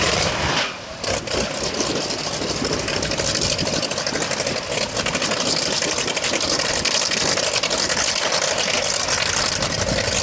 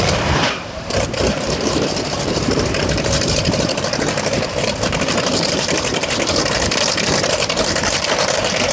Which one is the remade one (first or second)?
second